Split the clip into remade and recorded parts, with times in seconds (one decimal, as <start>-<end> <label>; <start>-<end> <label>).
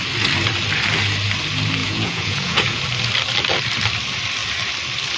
0.0-1.8 recorded; 1.8-2.8 remade; 2.8-5.2 recorded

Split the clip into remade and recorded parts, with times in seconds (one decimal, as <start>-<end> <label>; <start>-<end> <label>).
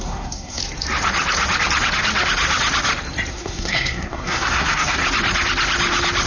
0.0-0.6 remade; 0.6-3.3 recorded; 3.3-5.0 remade; 5.0-6.3 recorded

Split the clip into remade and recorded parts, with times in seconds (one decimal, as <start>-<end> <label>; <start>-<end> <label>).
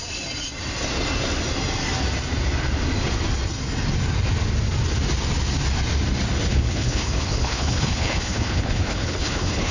0.0-6.5 recorded; 6.5-9.7 remade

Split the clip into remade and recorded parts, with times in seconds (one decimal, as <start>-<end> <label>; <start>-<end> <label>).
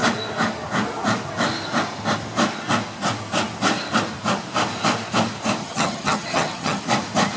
0.0-5.6 recorded; 5.6-6.8 remade; 6.8-7.4 recorded